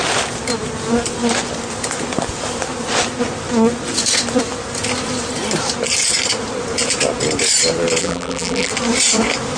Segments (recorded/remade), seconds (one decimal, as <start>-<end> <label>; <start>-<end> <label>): 0.0-8.0 recorded; 8.0-8.7 remade; 8.7-9.6 recorded